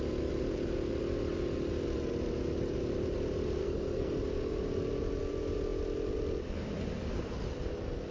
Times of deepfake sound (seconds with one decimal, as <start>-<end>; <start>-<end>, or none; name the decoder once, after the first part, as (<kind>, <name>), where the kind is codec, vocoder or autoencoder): 3.6-4.2 (codec, SNAC)